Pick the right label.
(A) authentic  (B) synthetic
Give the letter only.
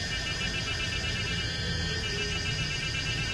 B